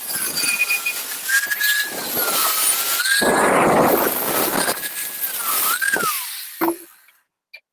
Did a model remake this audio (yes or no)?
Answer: no